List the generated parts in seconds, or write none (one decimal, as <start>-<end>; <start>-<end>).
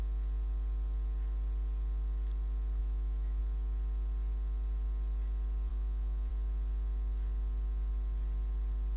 2.8-3.4; 5.7-6.3